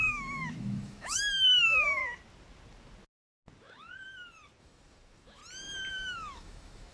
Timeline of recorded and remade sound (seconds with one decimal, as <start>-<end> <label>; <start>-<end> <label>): 0.0-2.0 remade; 2.0-4.6 recorded; 4.6-5.4 remade; 5.4-5.9 recorded; 5.9-6.9 remade